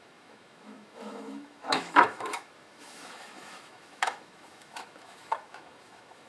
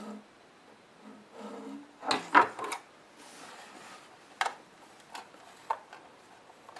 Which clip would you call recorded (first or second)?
second